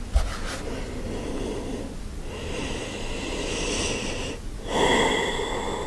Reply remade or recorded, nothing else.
recorded